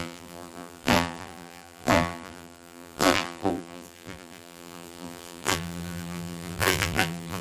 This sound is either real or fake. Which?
fake